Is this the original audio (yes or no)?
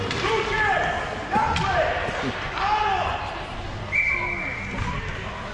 yes